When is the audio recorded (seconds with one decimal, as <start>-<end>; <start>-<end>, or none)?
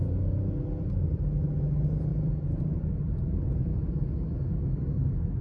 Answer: 0.0-3.7